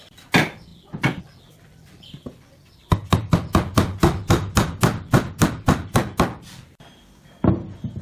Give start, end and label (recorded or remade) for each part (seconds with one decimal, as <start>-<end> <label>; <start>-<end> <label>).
0.0-8.0 recorded